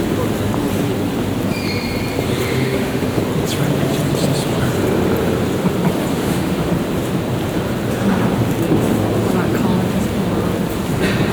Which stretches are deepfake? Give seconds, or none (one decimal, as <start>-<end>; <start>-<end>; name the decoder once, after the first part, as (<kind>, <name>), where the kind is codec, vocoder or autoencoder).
2.5-3.2 (autoencoder, DAC-VAE); 6.1-6.7